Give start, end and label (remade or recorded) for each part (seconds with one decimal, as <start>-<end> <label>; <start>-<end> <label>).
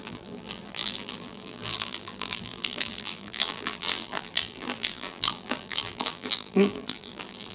0.0-7.5 remade